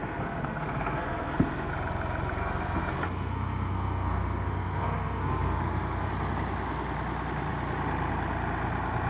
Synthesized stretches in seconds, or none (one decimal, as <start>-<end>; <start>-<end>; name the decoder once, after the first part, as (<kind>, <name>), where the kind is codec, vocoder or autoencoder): 0.0-1.7 (codec, SNAC); 2.4-6.1